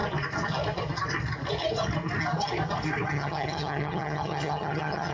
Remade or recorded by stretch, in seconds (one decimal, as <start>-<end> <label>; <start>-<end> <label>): 0.0-3.1 recorded; 3.1-5.1 remade